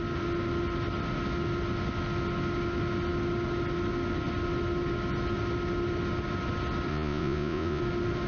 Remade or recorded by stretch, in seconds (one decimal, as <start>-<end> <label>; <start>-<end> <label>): 0.0-6.9 recorded; 6.9-7.8 remade; 7.8-8.3 recorded